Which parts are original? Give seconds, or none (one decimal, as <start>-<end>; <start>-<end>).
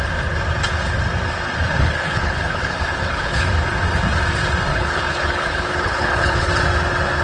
0.0-1.7; 3.5-4.7; 6.5-7.2